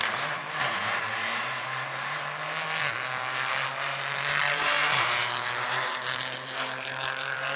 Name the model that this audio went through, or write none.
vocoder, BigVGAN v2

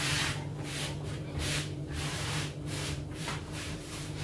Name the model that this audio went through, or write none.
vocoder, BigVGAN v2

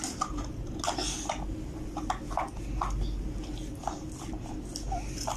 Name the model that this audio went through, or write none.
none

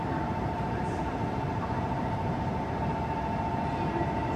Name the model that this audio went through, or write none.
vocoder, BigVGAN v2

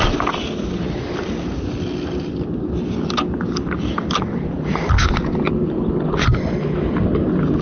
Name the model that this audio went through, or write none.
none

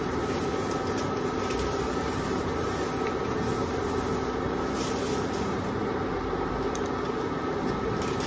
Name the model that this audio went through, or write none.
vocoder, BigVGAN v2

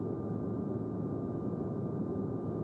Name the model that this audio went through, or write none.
none